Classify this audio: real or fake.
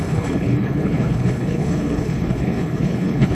fake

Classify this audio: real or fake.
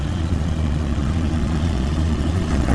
fake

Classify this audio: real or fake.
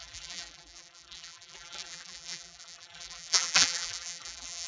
fake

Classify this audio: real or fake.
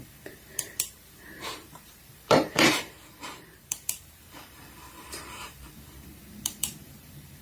fake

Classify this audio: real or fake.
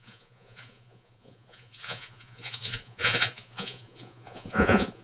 fake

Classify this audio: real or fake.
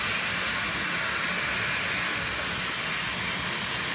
real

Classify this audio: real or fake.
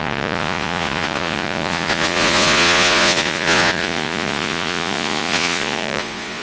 fake